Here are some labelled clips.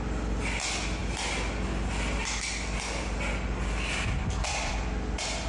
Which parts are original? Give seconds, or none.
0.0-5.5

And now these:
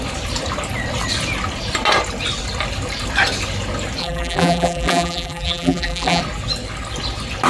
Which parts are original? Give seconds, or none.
0.0-4.0; 6.2-7.5

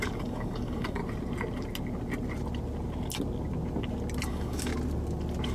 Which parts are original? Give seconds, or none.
1.0-4.3; 4.7-5.5

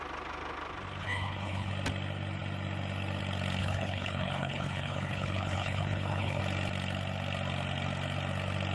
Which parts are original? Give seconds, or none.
0.0-1.0; 1.7-3.6; 6.4-8.7

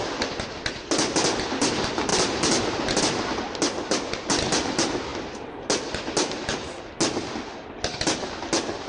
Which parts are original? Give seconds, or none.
0.0-8.9

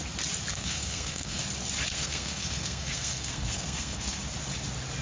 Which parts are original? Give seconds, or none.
0.0-0.5; 1.4-1.9; 4.2-5.0

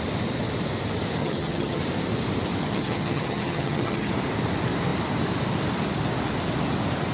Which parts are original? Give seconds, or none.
0.0-1.2; 1.8-2.6; 4.1-7.1